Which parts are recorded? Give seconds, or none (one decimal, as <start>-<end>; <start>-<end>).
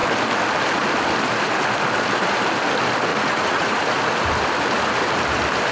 0.0-3.1; 3.9-5.7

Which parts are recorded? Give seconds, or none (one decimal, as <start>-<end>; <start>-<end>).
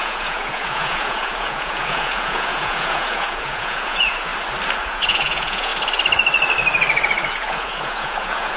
4.3-4.8; 5.7-7.3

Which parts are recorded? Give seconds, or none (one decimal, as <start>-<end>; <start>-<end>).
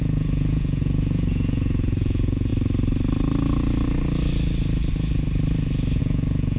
2.5-6.0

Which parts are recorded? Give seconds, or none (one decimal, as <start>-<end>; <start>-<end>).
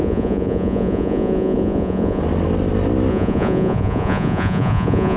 2.2-3.1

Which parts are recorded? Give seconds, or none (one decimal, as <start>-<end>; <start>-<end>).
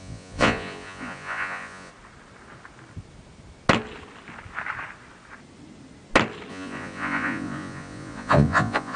1.9-6.5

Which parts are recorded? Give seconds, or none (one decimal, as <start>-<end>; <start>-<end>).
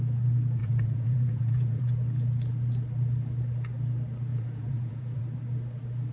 0.0-0.6; 1.8-4.3; 5.2-6.1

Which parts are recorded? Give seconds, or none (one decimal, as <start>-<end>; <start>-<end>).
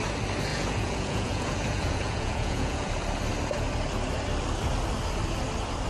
0.0-0.5; 2.9-5.9